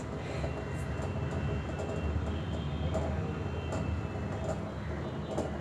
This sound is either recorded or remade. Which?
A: recorded